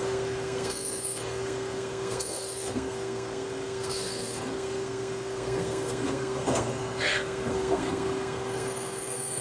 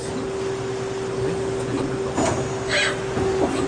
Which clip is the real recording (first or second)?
second